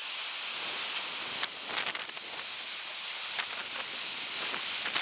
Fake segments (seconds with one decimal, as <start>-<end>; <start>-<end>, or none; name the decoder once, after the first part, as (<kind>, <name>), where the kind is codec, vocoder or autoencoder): 3.6-5.0 (vocoder, BigVGAN v2)